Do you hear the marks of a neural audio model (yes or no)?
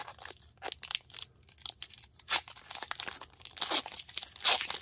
no